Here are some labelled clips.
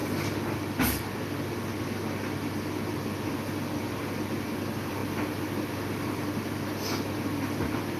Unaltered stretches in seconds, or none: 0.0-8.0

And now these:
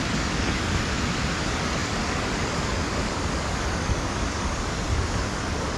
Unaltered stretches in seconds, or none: 0.9-1.4

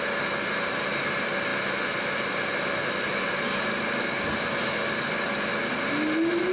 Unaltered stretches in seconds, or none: 0.0-6.5

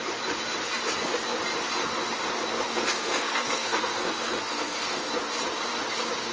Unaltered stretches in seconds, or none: 0.0-2.7; 5.1-6.3

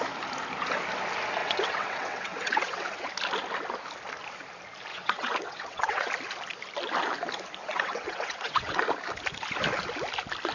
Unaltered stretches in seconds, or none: 0.0-1.4; 3.1-4.9; 6.1-7.6; 8.8-10.5

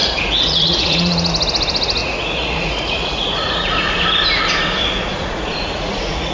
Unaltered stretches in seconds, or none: 1.3-2.0; 3.9-5.1

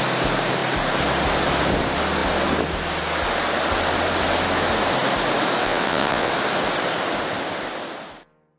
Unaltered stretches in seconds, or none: 0.0-5.6; 6.3-8.6

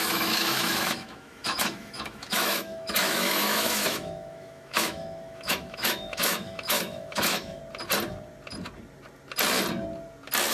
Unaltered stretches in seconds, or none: 7.6-10.5